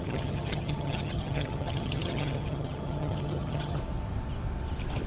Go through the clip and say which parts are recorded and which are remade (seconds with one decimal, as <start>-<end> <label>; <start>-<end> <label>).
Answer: 0.0-3.8 remade; 3.8-5.1 recorded